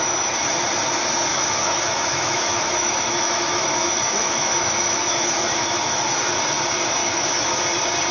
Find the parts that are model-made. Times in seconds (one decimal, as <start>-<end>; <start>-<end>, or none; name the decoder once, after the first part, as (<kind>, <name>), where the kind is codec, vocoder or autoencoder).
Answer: 1.3-6.0 (autoencoder, DAC-VAE); 7.0-7.6